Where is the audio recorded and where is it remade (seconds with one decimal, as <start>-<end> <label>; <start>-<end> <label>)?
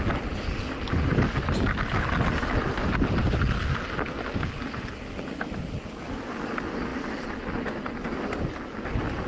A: 0.0-9.3 recorded